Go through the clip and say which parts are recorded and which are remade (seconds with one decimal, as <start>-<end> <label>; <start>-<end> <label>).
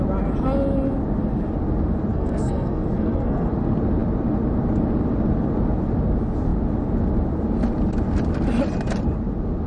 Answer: 0.0-2.1 recorded; 2.1-3.5 remade; 3.5-9.7 recorded